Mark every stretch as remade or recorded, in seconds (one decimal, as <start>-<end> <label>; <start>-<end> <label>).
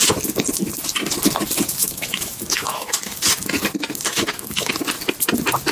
0.0-1.8 recorded; 1.8-3.0 remade; 3.0-4.1 recorded; 4.1-4.7 remade; 4.7-5.7 recorded